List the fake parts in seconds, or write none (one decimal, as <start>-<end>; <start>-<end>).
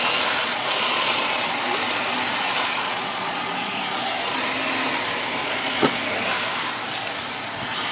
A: 0.4-1.2; 2.5-3.8; 5.4-6.0